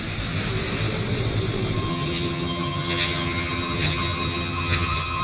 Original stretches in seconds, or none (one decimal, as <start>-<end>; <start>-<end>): 0.0-1.9